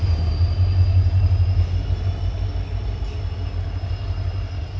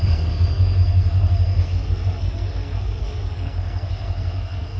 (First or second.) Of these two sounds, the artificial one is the second